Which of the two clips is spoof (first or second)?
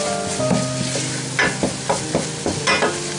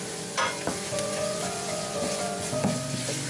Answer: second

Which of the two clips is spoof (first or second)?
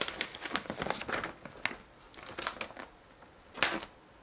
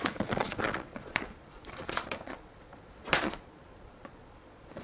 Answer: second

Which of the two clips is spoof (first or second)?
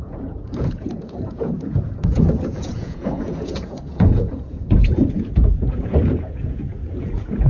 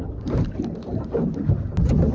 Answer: first